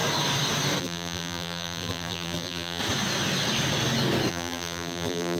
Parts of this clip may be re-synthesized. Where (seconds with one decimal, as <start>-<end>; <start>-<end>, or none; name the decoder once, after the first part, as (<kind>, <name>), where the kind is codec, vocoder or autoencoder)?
0.8-2.8 (vocoder, BigVGAN v2); 4.3-5.4